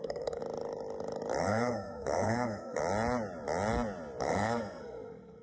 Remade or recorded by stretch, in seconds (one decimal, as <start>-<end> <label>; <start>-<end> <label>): 0.0-0.4 remade; 0.4-1.4 recorded; 1.4-2.8 remade; 2.8-4.2 recorded; 4.2-5.4 remade